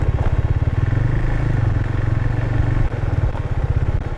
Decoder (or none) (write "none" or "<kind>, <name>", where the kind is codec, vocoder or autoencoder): none